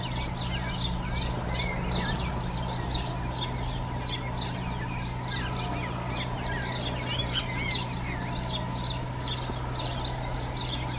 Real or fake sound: real